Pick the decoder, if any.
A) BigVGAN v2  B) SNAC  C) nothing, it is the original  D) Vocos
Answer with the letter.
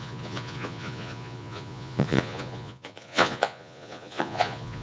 D